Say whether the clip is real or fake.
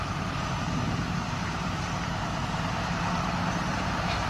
fake